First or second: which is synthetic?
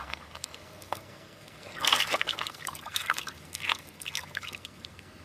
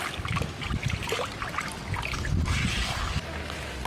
first